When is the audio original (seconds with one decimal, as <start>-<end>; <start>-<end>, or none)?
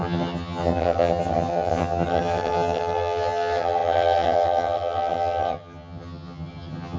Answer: none